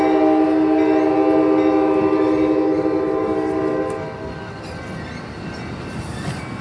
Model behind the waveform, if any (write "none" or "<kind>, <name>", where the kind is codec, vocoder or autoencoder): none